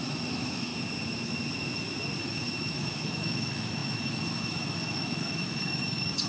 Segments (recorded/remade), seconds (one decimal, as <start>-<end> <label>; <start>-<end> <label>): 0.0-0.7 remade; 0.7-2.2 recorded; 2.2-6.3 remade